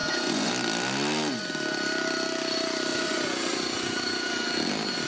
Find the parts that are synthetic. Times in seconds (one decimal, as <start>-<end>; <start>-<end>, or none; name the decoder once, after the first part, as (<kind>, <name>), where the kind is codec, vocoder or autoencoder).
0.0-0.5 (vocoder, Vocos); 2.9-4.5